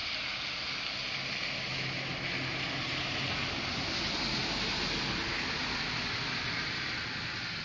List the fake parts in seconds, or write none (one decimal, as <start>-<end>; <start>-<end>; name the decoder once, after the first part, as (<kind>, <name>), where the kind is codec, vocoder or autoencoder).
none